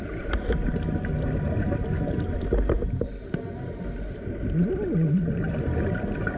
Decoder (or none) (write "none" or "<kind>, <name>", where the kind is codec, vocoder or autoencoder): none